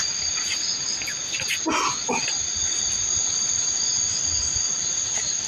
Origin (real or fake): real